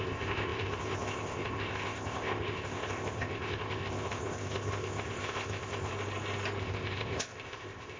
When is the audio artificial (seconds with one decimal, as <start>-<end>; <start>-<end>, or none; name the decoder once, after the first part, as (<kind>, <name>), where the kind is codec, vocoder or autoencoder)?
0.0-5.9 (codec, ZipCodec); 6.6-8.0